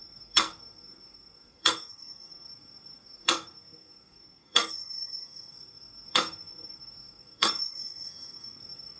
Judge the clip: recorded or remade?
remade